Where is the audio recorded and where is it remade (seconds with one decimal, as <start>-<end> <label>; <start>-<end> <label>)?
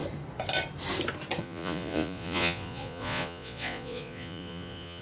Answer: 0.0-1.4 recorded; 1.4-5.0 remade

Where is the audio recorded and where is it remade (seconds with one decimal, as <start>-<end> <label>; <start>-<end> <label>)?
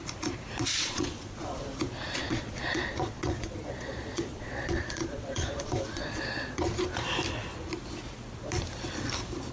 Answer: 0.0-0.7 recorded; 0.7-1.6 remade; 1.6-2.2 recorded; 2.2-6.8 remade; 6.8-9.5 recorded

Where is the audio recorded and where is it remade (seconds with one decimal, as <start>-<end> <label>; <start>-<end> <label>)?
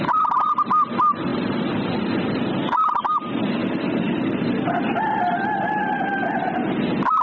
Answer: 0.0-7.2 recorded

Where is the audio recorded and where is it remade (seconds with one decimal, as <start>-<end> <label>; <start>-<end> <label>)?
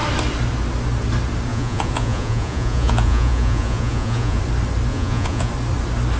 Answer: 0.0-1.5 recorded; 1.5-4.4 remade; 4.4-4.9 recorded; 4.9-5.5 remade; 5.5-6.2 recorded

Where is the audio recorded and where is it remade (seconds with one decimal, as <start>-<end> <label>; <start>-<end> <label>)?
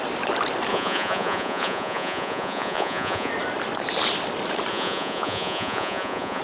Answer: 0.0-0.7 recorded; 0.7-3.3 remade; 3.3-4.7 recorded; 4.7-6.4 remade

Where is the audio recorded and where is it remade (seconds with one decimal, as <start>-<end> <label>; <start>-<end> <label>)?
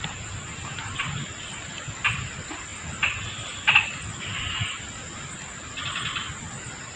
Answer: 0.0-7.0 recorded